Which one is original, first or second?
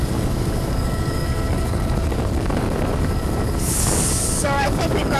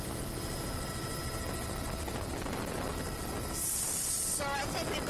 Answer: second